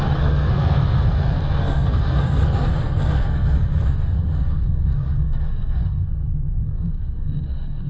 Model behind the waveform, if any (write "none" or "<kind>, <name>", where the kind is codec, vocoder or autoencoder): codec, SNAC